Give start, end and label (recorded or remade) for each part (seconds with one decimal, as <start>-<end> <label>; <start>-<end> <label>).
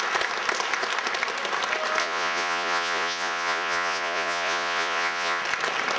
0.0-2.0 recorded; 2.0-5.4 remade; 5.4-6.0 recorded